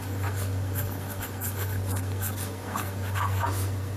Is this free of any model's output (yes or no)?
no